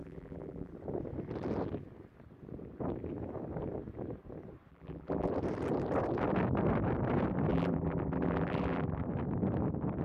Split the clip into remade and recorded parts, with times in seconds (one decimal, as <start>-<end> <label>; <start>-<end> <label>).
0.0-0.7 remade; 0.7-4.7 recorded; 4.7-5.3 remade; 5.3-7.5 recorded; 7.5-9.0 remade; 9.0-10.0 recorded